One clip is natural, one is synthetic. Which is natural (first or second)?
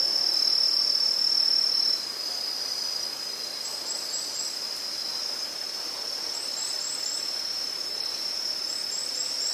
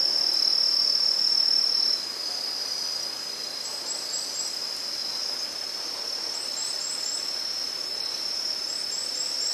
second